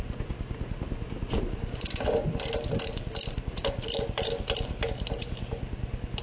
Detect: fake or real real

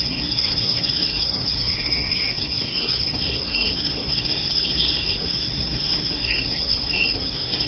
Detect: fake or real fake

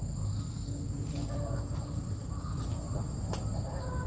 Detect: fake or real real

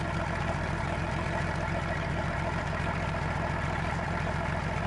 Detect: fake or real real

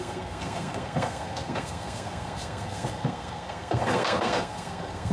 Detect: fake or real fake